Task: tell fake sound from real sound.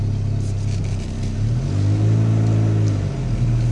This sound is real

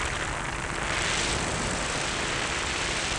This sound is real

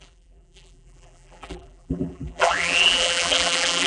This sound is fake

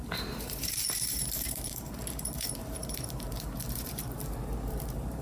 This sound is fake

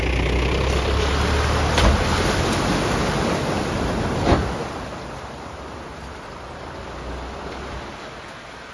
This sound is real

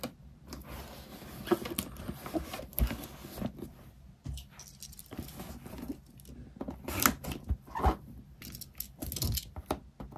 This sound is real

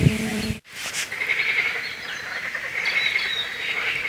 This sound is fake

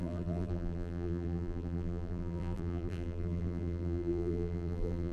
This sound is fake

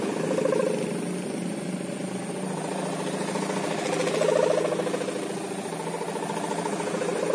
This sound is real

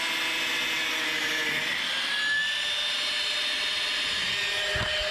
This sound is real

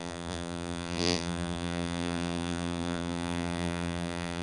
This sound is fake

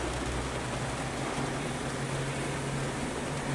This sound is real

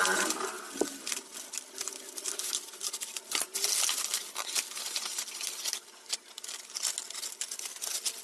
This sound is real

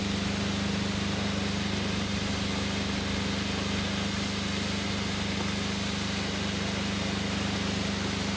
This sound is real